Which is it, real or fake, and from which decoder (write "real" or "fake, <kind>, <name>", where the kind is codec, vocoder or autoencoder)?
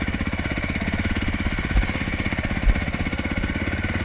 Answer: real